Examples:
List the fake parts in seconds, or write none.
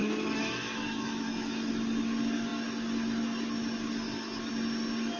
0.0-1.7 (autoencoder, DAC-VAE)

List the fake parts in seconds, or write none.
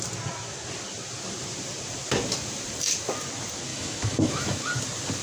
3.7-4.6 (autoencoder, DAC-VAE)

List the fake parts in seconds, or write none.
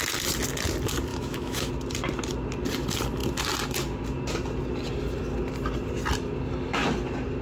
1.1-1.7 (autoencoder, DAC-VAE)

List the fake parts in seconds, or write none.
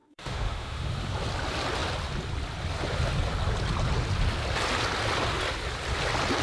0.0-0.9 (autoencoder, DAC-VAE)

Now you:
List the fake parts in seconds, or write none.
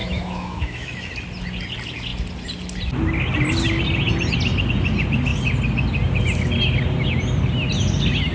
0.0-1.1 (autoencoder, DAC-VAE)